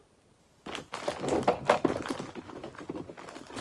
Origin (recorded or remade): recorded